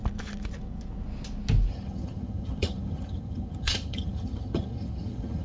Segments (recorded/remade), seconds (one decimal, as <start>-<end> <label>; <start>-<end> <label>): 0.0-1.7 recorded; 1.7-5.4 remade